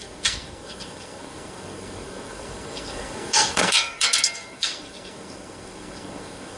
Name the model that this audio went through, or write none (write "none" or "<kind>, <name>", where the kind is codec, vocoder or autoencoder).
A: codec, SNAC